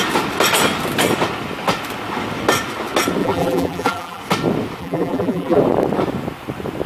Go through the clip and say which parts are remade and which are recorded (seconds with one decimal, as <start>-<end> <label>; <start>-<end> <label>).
0.0-3.2 recorded; 3.2-4.2 remade; 4.2-4.8 recorded; 4.8-5.6 remade; 5.6-6.9 recorded